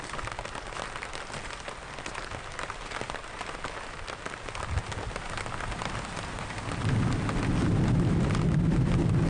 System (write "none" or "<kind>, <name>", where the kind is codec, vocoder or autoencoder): none